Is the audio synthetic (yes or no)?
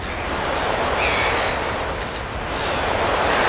no